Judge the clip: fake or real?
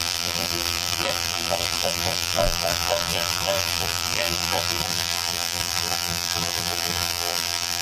fake